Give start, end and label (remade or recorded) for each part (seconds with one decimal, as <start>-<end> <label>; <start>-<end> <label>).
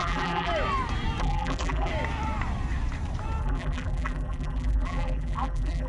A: 0.0-0.5 remade; 0.5-1.2 recorded; 1.2-1.9 remade; 1.9-3.4 recorded; 3.4-5.9 remade